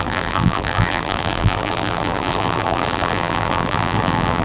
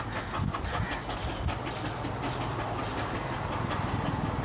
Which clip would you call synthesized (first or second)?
first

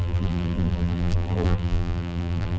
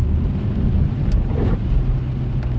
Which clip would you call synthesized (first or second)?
first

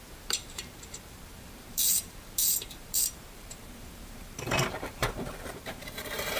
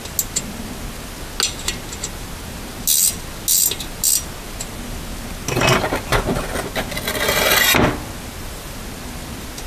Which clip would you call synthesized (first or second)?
first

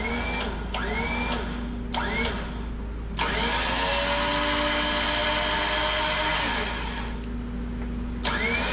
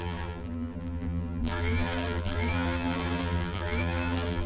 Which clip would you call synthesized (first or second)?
second